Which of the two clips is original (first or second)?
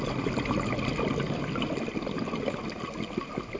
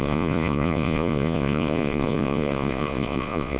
first